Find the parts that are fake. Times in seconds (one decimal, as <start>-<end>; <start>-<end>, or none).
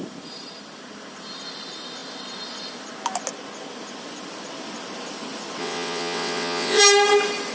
5.6-6.8